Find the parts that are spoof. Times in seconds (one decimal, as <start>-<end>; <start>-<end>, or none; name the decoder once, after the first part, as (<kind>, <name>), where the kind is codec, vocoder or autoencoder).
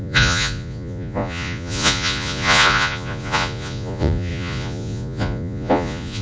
0.0-6.2 (vocoder, Vocos)